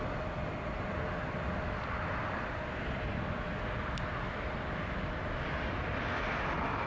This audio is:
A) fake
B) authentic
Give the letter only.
B